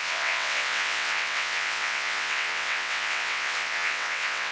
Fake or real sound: fake